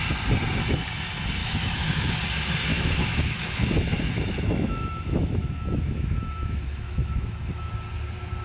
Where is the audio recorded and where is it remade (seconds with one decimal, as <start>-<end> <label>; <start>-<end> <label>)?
0.0-1.4 recorded; 1.4-2.1 remade; 2.1-2.7 recorded; 2.7-7.7 remade; 7.7-8.4 recorded